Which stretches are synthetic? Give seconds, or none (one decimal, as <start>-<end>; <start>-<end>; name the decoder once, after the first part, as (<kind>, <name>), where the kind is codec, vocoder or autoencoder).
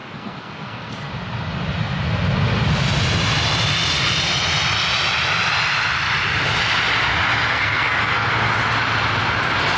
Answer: 0.0-1.1 (codec, SNAC); 7.5-8.3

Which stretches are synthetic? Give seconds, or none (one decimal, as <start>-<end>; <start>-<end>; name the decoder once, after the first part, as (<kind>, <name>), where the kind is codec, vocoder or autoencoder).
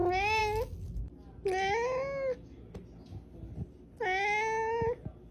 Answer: none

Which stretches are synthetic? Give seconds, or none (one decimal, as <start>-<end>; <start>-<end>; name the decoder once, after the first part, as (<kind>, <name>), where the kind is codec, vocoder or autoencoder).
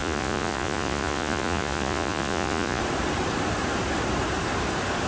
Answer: 0.0-2.8 (vocoder, Vocos)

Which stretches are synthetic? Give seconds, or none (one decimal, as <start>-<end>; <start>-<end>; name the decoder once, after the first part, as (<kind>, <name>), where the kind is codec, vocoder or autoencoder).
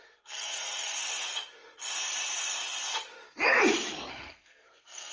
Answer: 0.0-1.0 (codec, SNAC); 4.1-5.1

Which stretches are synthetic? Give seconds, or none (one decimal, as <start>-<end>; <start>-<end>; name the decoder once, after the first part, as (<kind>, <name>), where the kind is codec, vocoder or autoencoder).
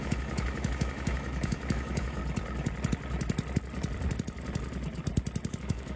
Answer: 0.0-2.2 (autoencoder, DAC-VAE); 5.6-6.0